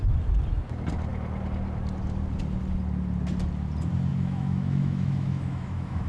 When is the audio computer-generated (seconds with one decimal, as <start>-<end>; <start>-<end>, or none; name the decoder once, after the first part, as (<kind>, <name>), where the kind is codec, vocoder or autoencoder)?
4.1-6.1 (autoencoder, DAC-VAE)